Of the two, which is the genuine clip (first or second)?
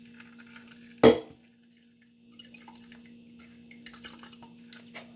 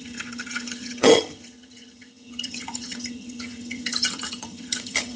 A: first